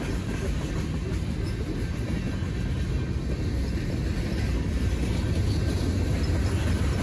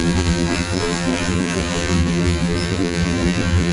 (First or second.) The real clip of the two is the first